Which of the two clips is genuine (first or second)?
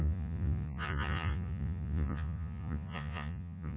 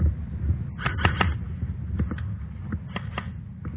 second